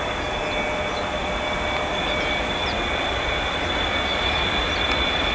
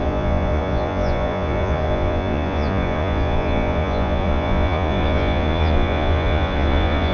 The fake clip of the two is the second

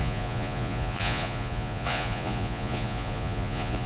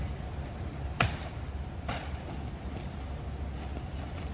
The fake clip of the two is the first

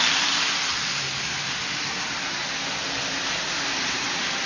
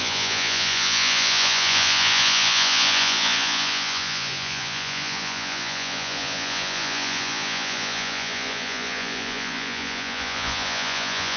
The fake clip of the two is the second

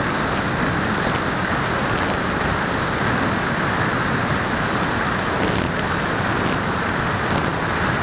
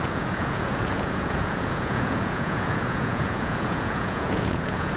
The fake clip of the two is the second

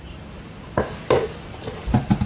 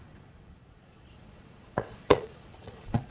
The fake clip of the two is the second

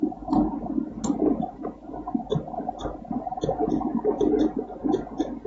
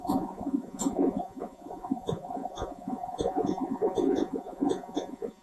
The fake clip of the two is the second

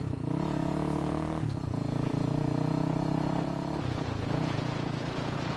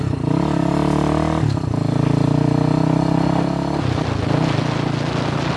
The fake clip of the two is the first